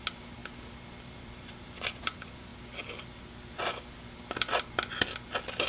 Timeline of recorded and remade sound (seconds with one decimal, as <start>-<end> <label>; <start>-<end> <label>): 0.0-0.4 remade; 0.4-1.2 recorded; 1.2-2.5 remade; 2.5-5.7 recorded